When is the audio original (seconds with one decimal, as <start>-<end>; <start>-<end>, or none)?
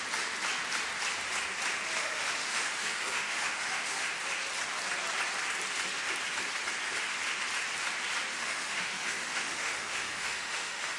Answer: 0.0-2.0; 4.1-8.3